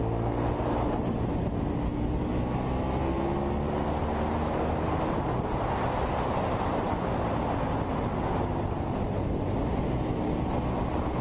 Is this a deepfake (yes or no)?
no